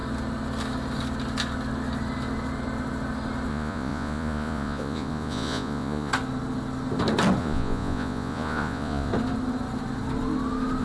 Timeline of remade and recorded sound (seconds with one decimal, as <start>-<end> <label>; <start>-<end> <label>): 0.0-3.5 recorded; 3.5-6.1 remade; 6.1-7.4 recorded; 7.4-9.1 remade; 9.1-10.8 recorded